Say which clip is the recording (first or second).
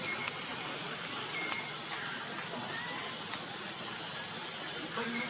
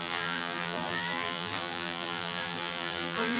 first